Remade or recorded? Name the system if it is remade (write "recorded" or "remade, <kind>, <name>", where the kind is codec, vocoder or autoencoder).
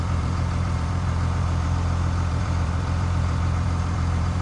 remade, vocoder, BigVGAN v2